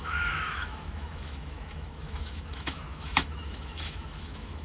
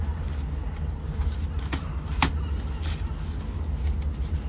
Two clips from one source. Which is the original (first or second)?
second